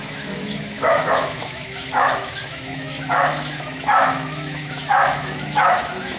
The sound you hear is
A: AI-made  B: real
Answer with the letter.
A